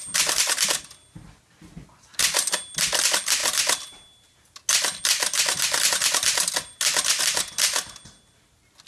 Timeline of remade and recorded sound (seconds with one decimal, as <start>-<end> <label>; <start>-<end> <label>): 0.0-8.9 recorded